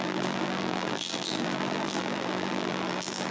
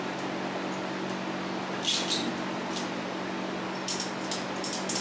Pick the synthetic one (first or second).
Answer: first